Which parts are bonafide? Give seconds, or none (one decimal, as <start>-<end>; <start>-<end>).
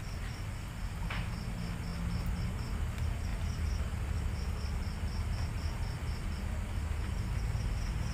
0.0-8.1